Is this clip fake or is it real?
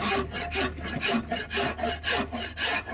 real